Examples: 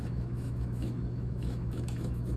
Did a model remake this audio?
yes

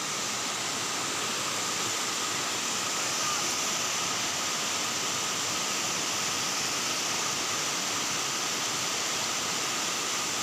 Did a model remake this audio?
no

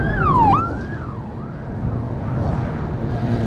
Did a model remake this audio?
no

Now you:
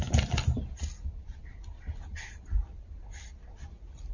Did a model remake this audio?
no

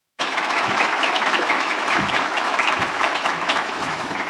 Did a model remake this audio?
yes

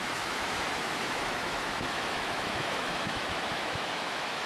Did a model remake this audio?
yes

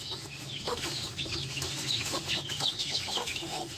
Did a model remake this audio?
yes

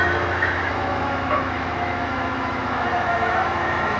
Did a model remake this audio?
yes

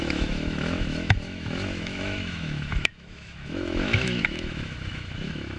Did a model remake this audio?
yes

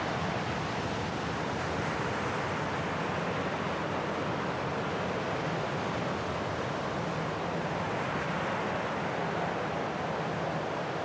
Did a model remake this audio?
no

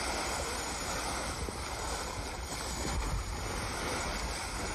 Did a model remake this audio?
no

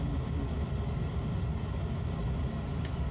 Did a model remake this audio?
no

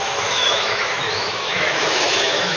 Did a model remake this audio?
yes